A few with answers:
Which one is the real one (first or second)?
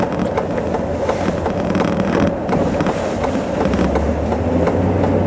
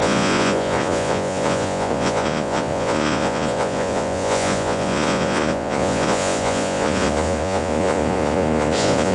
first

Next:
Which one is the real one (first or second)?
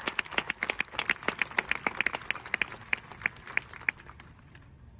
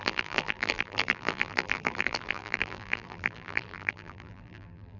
first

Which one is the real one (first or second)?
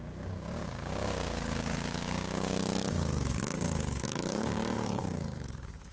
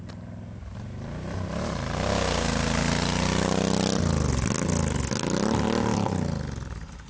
second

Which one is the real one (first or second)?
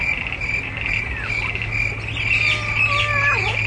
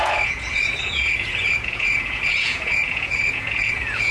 first